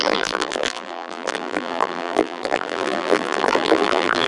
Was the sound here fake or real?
fake